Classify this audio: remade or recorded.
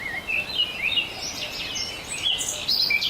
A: recorded